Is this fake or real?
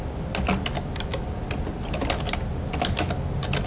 real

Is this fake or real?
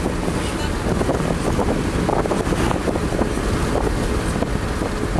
real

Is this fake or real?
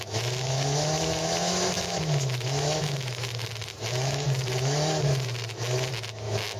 fake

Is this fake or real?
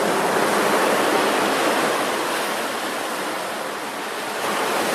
real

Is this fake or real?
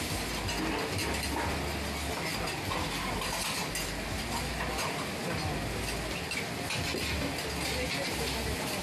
real